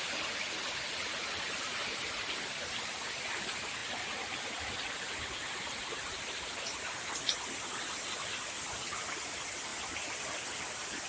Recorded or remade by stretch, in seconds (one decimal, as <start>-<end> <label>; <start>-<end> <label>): 0.0-11.1 recorded

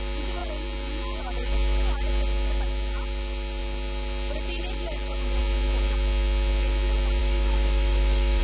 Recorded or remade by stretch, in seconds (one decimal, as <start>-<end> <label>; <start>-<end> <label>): 0.0-7.2 recorded; 7.2-8.4 remade

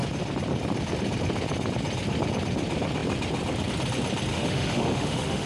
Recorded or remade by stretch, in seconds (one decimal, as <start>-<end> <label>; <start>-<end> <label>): 0.0-4.3 recorded; 4.3-5.5 remade

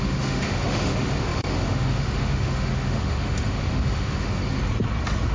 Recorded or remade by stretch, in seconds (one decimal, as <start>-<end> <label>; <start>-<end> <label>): 0.0-4.4 remade; 4.4-5.3 recorded

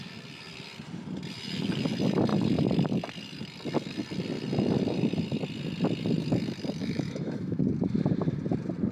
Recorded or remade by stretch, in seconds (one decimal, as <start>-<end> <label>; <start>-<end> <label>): 0.0-6.8 recorded; 6.8-7.6 remade; 7.6-8.9 recorded